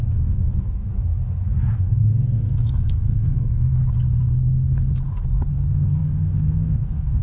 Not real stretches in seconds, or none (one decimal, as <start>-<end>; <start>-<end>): 0.0-1.1; 1.8-3.8; 5.5-7.2